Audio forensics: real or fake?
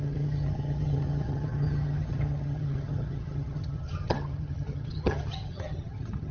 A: fake